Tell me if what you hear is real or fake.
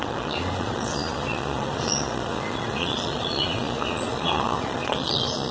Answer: fake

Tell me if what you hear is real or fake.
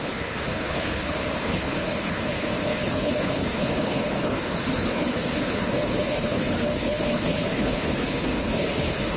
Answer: fake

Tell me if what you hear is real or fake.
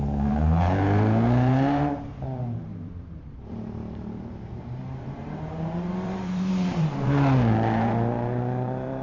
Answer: fake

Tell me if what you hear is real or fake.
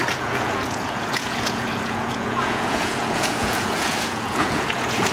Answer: fake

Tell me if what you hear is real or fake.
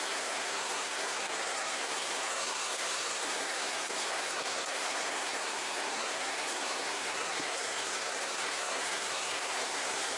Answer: fake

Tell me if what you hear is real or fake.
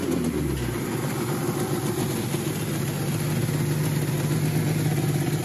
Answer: real